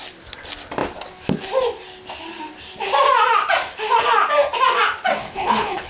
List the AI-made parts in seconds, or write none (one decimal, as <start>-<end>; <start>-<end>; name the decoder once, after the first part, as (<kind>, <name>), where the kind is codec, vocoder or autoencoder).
5.2-5.9 (codec, HILCodec)